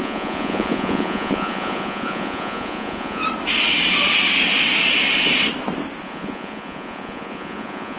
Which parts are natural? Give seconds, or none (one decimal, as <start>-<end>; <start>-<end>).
3.2-6.0